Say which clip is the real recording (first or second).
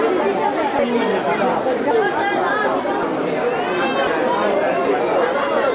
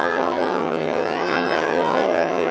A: first